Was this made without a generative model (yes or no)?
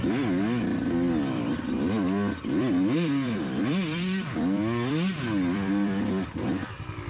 no